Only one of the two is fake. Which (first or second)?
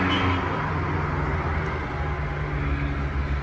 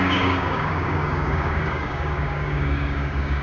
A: second